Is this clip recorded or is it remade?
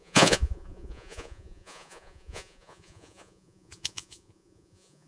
remade